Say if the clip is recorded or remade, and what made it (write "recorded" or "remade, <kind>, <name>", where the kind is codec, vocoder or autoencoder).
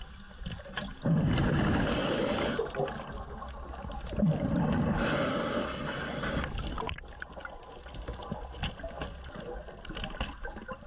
recorded